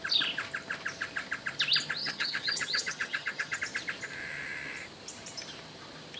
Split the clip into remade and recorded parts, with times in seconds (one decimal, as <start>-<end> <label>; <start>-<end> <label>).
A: 0.0-2.0 recorded; 2.0-3.6 remade; 3.6-6.2 recorded